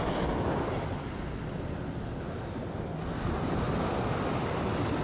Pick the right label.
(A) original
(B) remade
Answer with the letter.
A